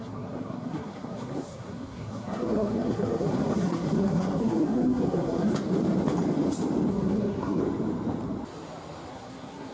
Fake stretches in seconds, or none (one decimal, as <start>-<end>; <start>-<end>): 0.0-5.5; 6.9-7.6; 9.1-9.7

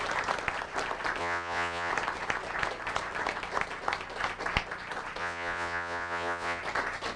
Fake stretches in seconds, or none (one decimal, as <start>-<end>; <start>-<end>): 1.2-1.9; 5.2-6.6

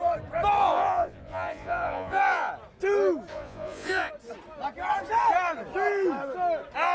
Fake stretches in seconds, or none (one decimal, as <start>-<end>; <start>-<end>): 0.6-2.5; 3.3-4.1

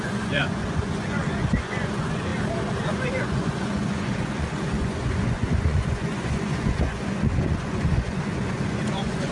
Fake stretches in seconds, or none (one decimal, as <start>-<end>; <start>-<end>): 0.0-2.3; 2.8-9.3